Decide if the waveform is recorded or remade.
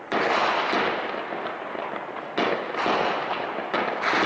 recorded